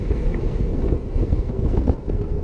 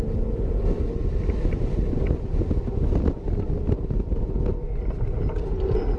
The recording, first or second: second